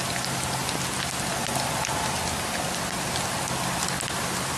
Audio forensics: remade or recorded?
recorded